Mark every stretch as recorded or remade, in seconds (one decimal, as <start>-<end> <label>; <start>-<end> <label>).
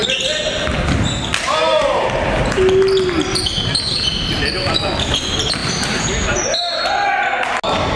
0.0-5.6 recorded; 5.6-6.9 remade; 6.9-8.0 recorded